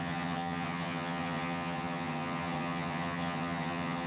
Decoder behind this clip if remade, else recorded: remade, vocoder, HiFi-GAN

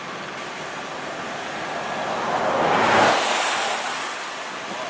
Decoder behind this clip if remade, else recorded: recorded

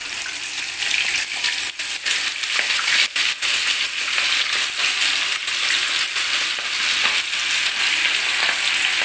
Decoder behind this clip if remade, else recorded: recorded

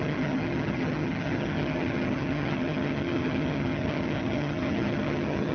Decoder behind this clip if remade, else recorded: remade, vocoder, HiFi-GAN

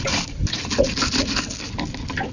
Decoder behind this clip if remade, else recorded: recorded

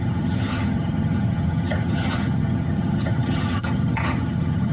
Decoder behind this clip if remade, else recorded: remade, vocoder, HiFi-GAN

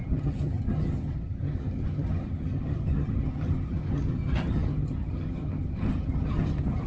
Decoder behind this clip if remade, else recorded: remade, vocoder, HiFi-GAN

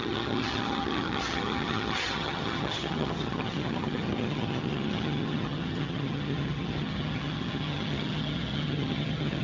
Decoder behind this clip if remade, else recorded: remade, vocoder, HiFi-GAN